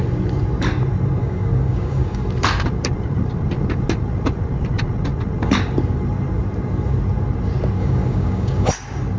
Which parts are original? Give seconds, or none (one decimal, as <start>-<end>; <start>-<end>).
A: 0.0-1.2; 2.2-7.8; 8.7-9.2